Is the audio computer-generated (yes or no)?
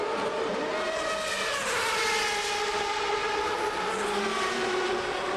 no